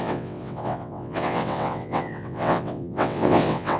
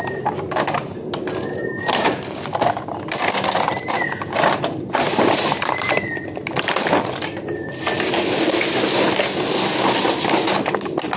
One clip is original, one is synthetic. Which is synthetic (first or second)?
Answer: first